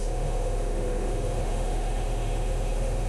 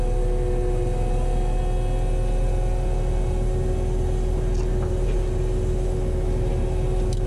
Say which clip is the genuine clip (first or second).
second